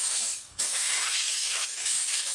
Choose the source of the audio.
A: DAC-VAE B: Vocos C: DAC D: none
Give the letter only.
C